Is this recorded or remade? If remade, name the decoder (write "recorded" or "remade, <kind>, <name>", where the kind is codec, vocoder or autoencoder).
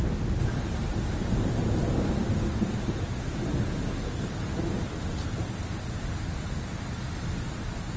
recorded